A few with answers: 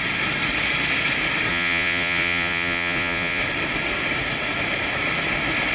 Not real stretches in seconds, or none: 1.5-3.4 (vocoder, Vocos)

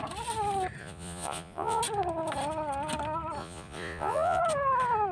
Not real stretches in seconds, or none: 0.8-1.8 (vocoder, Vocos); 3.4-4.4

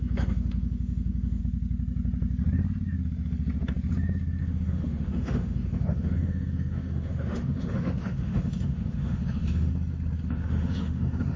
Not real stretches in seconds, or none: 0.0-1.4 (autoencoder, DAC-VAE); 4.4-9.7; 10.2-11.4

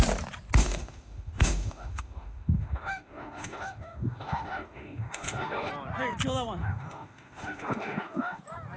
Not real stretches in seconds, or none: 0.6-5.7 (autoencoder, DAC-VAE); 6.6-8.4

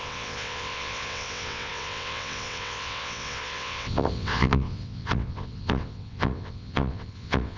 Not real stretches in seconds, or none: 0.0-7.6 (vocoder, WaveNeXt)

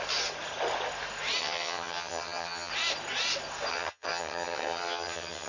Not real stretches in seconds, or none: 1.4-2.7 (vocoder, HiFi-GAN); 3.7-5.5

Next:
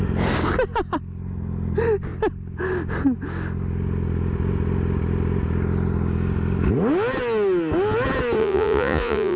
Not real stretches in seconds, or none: 8.4-9.4 (vocoder, Vocos)